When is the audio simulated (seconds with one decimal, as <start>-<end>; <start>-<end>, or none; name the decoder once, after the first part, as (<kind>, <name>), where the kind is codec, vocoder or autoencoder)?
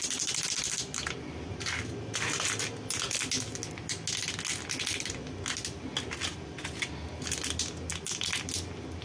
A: none